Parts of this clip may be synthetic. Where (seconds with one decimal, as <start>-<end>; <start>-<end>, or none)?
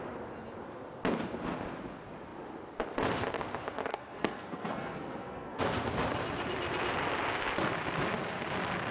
3.9-5.6